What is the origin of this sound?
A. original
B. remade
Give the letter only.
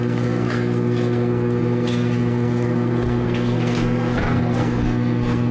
B